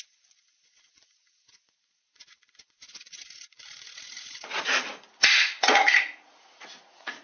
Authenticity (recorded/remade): remade